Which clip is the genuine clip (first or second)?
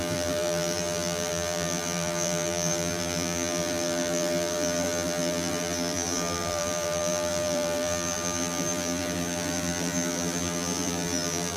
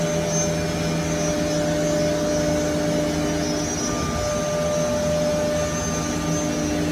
second